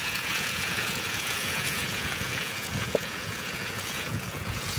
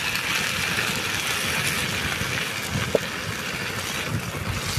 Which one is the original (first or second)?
second